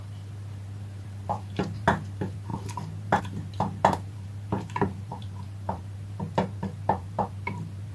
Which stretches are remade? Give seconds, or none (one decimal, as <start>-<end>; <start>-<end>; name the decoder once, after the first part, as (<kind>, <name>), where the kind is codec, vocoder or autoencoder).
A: 0.0-7.9 (vocoder, BigVGAN v2)

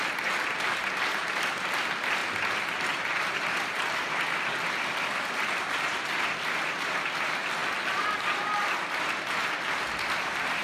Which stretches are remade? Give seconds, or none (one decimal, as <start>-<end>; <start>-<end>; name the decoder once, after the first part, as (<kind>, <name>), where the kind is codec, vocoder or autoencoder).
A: 2.2-2.8 (vocoder, BigVGAN v2)